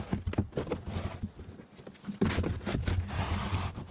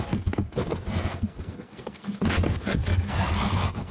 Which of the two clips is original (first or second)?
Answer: first